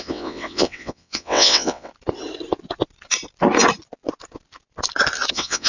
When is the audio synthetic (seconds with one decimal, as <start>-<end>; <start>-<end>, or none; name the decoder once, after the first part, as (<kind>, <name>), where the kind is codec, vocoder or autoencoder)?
0.0-1.9 (vocoder, WaveNeXt); 5.3-5.7